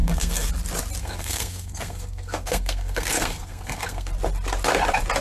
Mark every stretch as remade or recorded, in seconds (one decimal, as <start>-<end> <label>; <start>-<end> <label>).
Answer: 0.0-0.5 remade; 0.5-1.0 recorded; 1.0-4.1 remade; 4.1-5.2 recorded